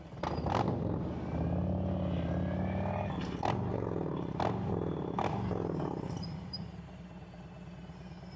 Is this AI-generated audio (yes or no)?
no